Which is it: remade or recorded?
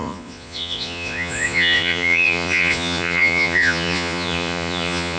remade